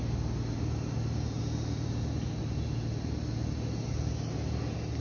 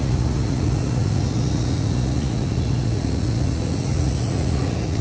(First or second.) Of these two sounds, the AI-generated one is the second